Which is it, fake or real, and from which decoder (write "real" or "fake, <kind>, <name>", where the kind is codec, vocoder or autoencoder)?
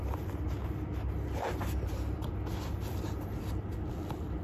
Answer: real